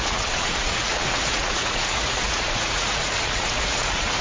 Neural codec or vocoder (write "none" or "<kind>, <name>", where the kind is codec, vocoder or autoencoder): vocoder, Vocos